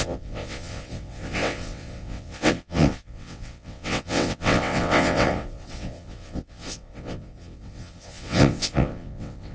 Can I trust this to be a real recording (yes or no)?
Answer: no